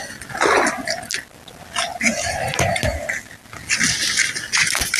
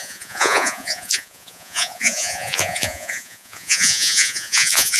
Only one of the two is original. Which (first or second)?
first